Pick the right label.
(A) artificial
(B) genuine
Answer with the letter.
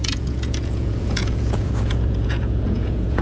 A